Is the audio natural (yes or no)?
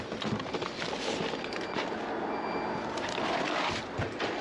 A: yes